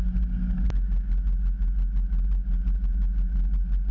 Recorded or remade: recorded